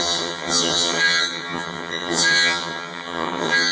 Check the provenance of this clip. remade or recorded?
remade